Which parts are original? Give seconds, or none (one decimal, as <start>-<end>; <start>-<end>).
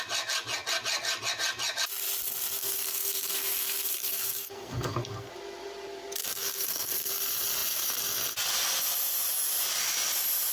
0.0-2.6; 5.3-6.2; 7.1-10.5